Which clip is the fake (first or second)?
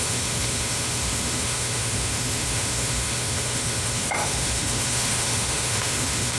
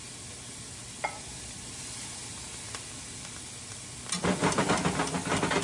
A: first